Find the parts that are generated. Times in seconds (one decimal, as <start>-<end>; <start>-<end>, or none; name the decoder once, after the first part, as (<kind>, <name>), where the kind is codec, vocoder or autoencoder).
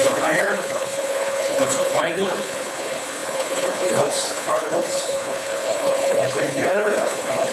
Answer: 0.0-7.5 (codec, HILCodec)